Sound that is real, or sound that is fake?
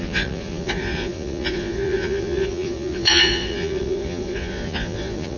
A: fake